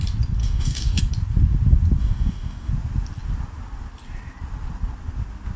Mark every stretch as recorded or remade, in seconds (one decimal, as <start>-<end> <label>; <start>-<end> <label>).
0.0-0.4 recorded; 0.4-1.0 remade; 1.0-2.0 recorded; 2.0-2.7 remade; 2.7-5.6 recorded